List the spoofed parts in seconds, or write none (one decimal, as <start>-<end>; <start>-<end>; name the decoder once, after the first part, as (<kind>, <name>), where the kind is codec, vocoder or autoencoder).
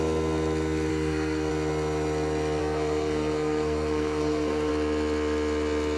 0.9-1.5 (codec, SNAC); 2.6-4.7